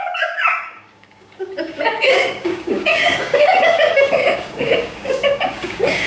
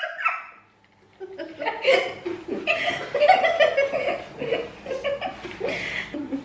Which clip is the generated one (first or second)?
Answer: first